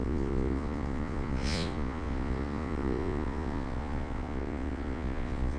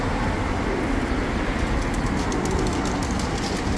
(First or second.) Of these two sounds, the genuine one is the second